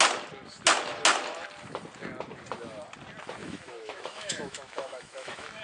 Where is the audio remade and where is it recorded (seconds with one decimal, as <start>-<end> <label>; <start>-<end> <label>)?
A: 0.0-3.4 recorded; 3.4-5.6 remade